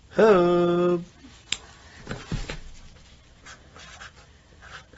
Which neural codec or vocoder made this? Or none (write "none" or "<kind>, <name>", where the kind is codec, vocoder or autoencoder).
none